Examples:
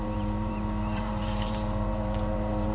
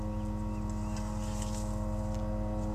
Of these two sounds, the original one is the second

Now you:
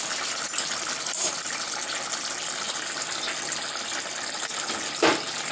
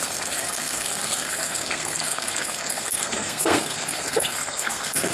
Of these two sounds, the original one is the first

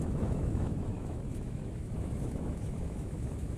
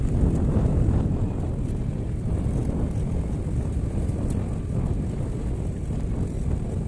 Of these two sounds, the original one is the second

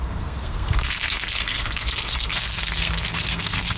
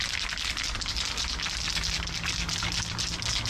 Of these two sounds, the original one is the second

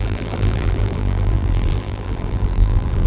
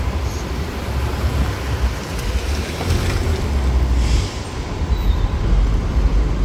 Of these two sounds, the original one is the second